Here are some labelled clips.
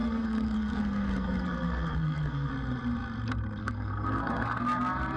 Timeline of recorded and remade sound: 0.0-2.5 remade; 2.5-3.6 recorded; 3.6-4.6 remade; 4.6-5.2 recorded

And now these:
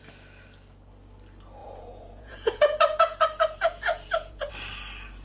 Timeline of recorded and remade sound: 0.0-1.6 recorded; 1.6-4.5 remade; 4.5-5.2 recorded

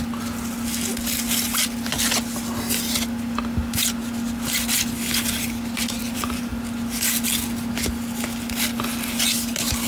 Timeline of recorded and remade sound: 0.0-6.0 recorded; 6.0-6.5 remade; 6.5-9.9 recorded

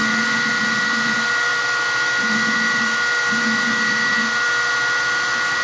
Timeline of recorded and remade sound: 0.0-5.6 recorded